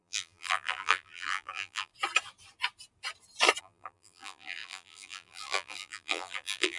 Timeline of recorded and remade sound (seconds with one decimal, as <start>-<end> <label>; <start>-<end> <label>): 0.0-1.9 remade; 1.9-3.6 recorded; 3.6-6.8 remade